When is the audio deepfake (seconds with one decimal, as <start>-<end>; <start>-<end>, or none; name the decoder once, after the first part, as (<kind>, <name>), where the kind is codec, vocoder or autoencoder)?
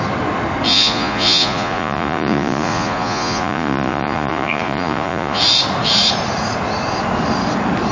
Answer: 0.7-5.4 (vocoder, Vocos)